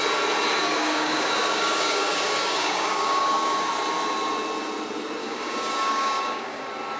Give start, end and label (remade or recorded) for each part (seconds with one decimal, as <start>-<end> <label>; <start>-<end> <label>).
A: 0.0-0.6 recorded; 0.6-3.7 remade; 3.7-5.2 recorded; 5.2-6.6 remade; 6.6-7.0 recorded